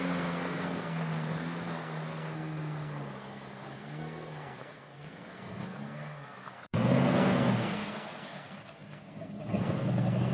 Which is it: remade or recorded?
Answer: remade